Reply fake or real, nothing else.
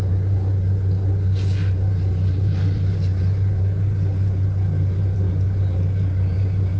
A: real